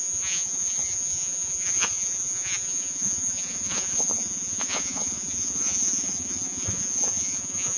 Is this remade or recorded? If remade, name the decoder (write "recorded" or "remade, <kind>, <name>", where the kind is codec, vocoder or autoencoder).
remade, vocoder, Vocos